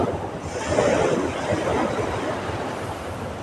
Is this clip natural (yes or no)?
yes